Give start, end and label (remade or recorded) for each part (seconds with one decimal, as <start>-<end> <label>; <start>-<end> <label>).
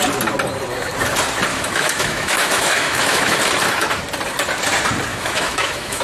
0.0-1.5 recorded; 1.5-3.4 remade; 3.4-5.1 recorded; 5.1-6.0 remade